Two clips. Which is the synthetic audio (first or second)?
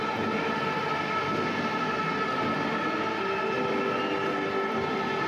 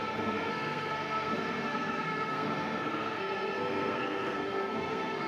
second